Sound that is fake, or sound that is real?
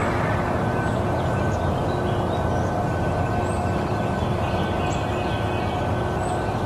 real